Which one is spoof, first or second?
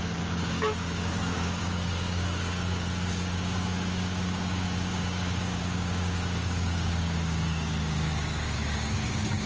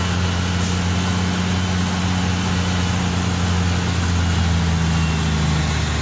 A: first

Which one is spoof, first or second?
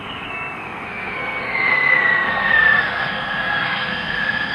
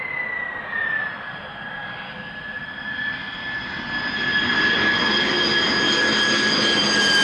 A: first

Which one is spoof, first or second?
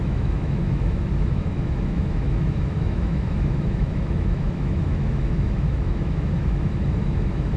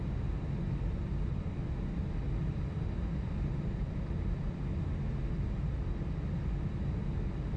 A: first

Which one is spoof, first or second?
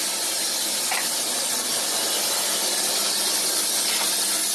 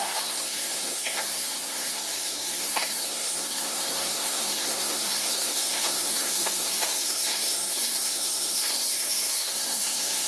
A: second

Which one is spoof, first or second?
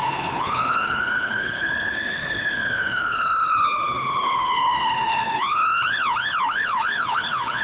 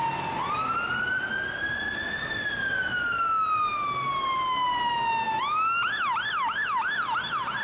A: first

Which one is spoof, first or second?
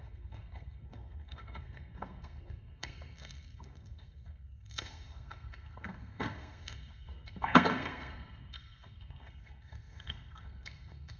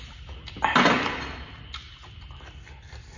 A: first